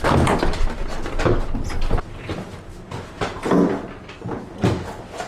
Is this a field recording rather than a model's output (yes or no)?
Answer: yes